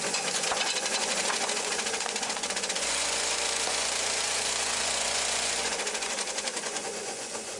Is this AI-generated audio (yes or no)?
yes